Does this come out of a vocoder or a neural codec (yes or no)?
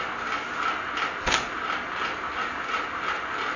no